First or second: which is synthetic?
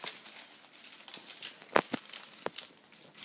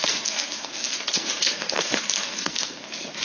second